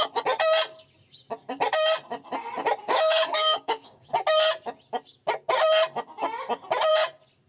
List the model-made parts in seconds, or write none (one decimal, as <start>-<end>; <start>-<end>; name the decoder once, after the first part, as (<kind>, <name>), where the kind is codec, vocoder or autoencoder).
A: 2.8-4.1 (codec, DAC)